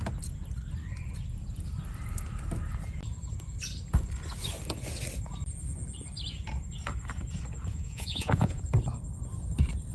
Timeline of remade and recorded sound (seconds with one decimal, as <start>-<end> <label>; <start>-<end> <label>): 0.0-7.7 recorded; 7.7-8.6 remade; 8.6-9.9 recorded